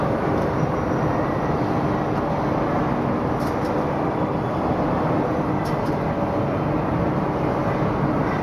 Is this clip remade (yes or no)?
no